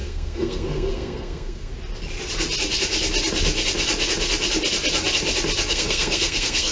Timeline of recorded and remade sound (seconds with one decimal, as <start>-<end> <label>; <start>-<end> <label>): 0.0-1.7 remade; 1.7-5.7 recorded; 5.7-6.7 remade